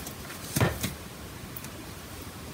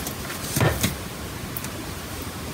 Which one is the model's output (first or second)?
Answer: first